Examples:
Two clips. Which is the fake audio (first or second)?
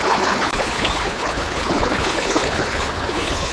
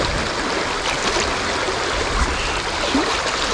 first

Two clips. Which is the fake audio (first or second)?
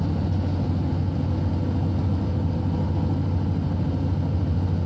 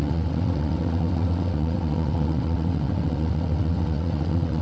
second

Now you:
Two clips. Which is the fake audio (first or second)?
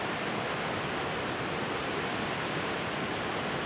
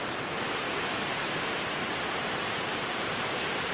second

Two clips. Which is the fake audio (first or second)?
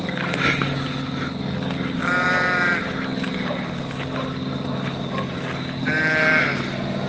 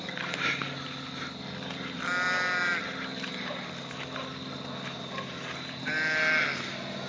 first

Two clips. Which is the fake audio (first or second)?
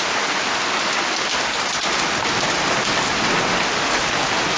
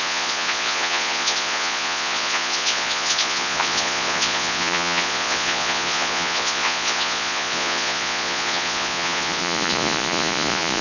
second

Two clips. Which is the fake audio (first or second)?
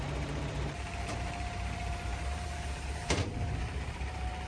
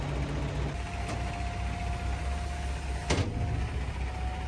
first